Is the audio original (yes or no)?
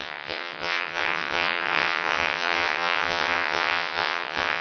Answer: no